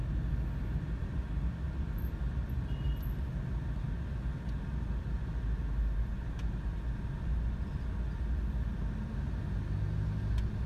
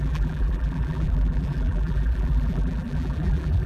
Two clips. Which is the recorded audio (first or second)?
first